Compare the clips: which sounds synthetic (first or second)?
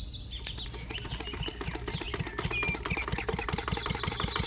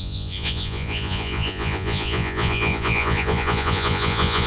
second